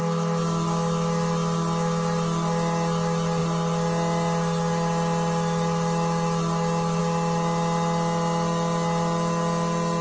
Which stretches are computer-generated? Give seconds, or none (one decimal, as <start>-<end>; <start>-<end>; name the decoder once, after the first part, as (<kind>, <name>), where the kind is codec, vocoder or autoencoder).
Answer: none